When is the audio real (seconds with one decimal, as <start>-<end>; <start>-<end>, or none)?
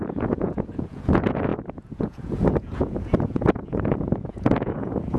none